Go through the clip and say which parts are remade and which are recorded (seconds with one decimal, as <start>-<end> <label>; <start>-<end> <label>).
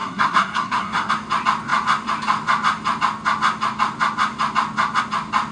0.0-1.1 remade; 1.1-5.5 recorded